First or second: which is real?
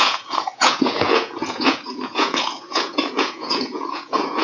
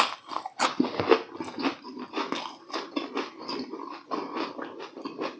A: second